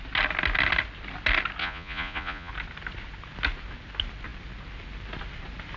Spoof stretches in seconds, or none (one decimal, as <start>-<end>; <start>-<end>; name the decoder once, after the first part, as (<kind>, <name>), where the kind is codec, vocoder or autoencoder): 1.6-2.5 (vocoder, Vocos)